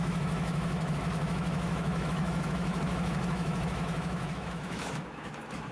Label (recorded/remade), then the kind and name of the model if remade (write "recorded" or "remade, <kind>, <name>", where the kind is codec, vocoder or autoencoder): remade, autoencoder, DAC-VAE